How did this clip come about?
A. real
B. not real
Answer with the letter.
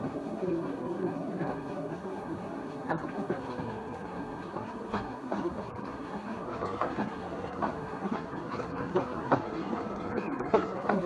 B